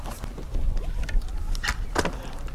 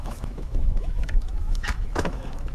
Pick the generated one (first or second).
second